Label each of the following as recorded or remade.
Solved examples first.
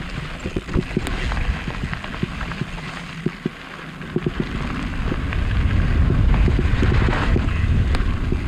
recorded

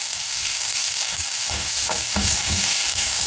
remade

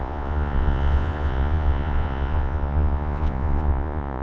remade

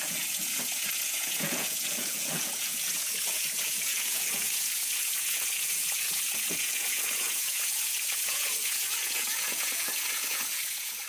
remade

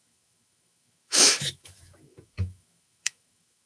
remade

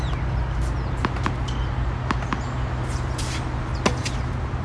recorded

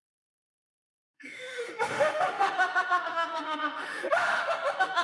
remade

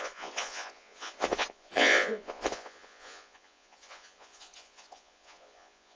remade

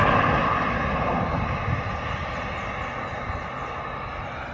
recorded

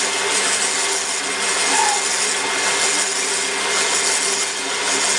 recorded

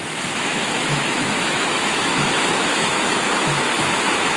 remade